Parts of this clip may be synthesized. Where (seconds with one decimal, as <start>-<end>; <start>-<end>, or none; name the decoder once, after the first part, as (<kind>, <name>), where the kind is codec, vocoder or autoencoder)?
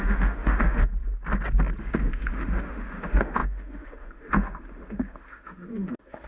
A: 0.0-0.9 (autoencoder, DAC-VAE); 1.8-6.3